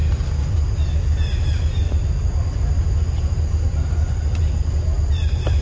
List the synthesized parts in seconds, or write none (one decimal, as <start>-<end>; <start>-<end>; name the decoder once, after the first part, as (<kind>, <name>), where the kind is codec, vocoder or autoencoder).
none